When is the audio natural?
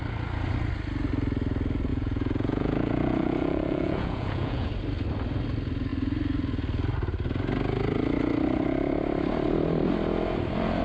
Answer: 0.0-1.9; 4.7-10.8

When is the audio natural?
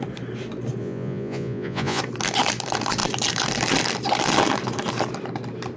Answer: 0.0-0.8; 2.0-5.8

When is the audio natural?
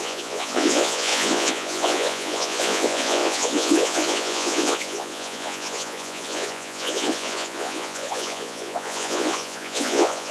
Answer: none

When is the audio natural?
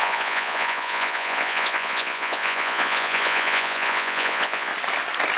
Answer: 4.7-5.4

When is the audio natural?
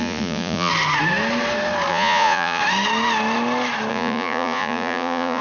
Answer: 0.7-1.9; 2.6-3.9